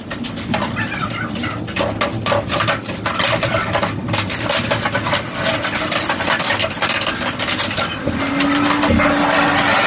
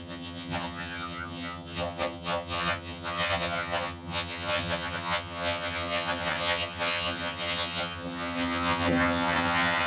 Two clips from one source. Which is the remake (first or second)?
second